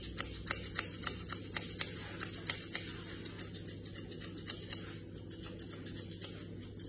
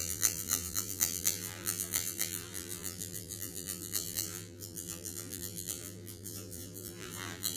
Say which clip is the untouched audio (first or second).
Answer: first